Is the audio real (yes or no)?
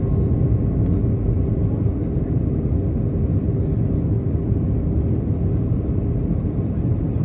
yes